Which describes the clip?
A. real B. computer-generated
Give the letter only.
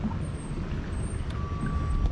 A